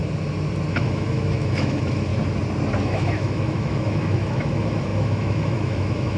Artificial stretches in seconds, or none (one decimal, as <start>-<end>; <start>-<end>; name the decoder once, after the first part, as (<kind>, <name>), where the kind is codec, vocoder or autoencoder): 0.7-2.1 (autoencoder, DAC-VAE); 2.8-6.2